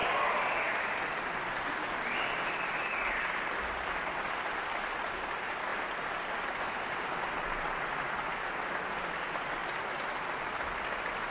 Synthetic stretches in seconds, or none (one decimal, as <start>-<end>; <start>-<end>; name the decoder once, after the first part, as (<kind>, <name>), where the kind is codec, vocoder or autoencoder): 0.0-5.1 (vocoder, BigVGAN v2); 5.7-7.3